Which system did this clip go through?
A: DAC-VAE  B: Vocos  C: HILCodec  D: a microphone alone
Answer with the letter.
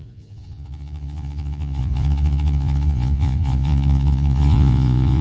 B